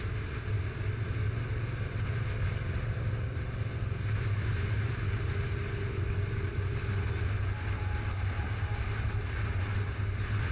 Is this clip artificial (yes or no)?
no